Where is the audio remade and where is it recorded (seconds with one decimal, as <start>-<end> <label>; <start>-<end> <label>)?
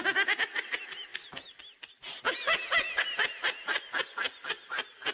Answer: 0.0-5.1 recorded